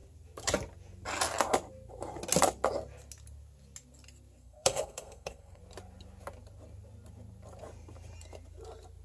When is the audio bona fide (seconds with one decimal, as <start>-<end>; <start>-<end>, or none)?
0.0-4.4; 5.6-9.0